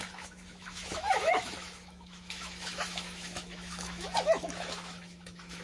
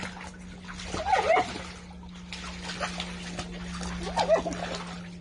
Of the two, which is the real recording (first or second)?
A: second